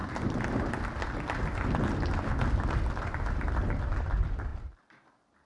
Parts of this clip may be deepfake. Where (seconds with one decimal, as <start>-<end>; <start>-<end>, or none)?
3.3-4.5